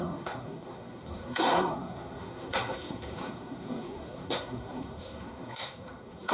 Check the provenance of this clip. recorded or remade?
remade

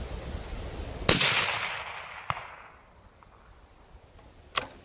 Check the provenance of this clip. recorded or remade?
recorded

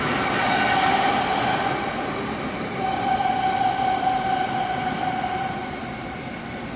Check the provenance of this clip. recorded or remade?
recorded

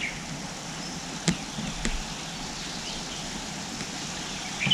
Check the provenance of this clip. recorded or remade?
recorded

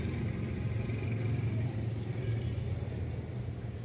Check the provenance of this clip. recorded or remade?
recorded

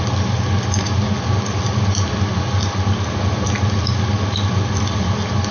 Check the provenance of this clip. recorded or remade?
recorded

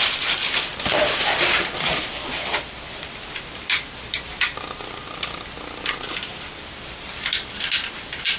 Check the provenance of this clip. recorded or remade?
remade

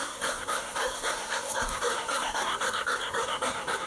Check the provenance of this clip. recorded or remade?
remade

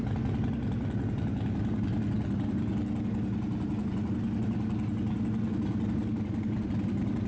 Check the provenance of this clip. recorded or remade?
recorded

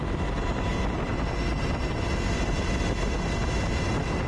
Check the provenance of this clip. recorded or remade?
recorded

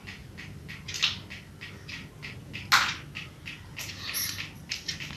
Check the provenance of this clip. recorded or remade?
recorded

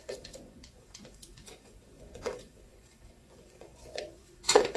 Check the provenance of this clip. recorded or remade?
remade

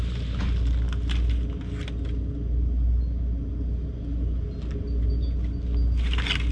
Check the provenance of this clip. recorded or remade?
recorded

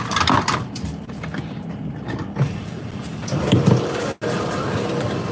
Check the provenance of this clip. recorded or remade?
recorded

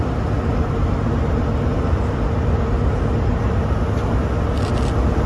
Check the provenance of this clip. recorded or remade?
recorded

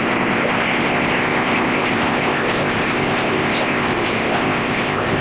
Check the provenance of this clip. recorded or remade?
remade